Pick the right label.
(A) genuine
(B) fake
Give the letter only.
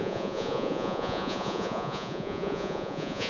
B